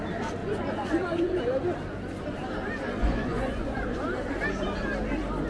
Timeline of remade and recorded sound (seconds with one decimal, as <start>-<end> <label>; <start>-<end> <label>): 0.0-0.4 recorded; 0.4-1.4 remade; 1.4-3.0 recorded; 3.0-4.0 remade; 4.0-5.5 recorded